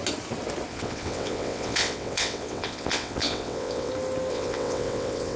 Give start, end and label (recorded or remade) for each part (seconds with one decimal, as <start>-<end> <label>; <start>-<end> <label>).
0.0-0.7 recorded; 0.7-3.9 remade; 3.9-4.3 recorded; 4.3-5.4 remade